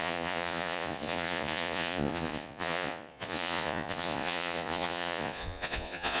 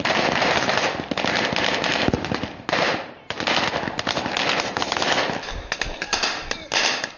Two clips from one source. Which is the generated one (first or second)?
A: first